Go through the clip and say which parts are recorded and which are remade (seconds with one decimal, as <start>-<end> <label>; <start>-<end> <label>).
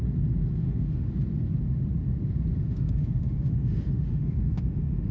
0.0-0.6 recorded; 0.6-1.1 remade; 1.1-2.6 recorded; 2.6-5.1 remade